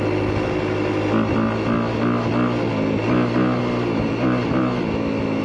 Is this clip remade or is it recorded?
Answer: recorded